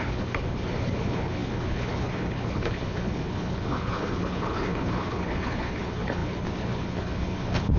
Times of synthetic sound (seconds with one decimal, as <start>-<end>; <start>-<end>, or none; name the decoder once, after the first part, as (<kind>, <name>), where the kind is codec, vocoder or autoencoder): 0.0-7.8 (codec, HILCodec)